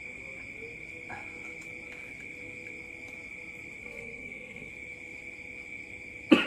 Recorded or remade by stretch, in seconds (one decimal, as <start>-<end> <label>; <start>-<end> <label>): 0.0-3.8 recorded; 3.8-4.7 remade; 4.7-6.5 recorded